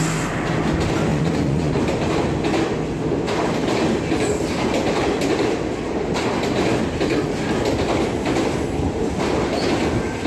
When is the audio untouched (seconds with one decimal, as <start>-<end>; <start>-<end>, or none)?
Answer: 0.0-1.1; 1.7-10.3